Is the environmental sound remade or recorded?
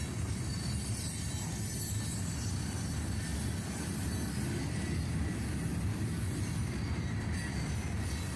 recorded